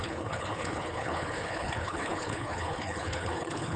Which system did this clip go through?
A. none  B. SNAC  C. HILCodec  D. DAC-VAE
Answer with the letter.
C